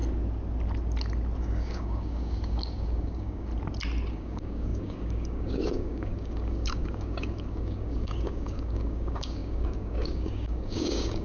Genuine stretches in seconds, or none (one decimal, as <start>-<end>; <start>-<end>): 0.0-1.4; 3.5-4.1